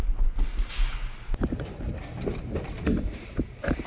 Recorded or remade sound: recorded